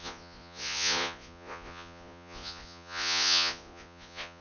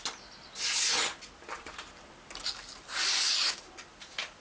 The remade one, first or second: first